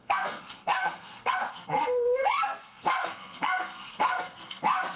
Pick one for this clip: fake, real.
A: fake